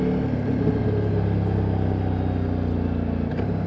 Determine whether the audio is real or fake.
real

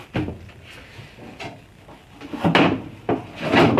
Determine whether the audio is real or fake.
real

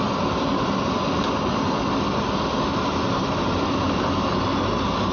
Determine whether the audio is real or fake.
real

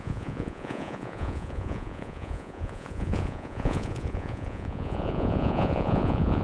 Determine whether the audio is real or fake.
fake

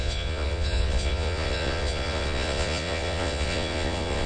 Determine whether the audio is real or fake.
fake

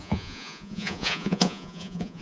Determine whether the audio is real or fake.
fake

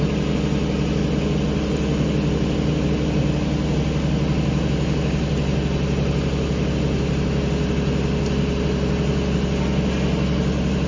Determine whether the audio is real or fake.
real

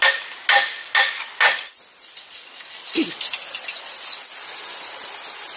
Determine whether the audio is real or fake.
real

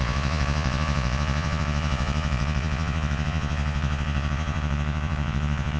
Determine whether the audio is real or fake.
fake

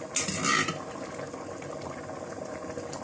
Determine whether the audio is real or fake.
real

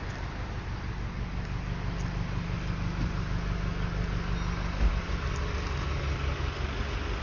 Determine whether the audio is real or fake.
real